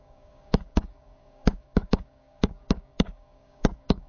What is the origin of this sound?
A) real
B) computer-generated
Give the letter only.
B